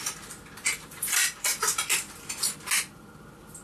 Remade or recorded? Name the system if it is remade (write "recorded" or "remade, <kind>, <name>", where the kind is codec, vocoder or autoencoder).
recorded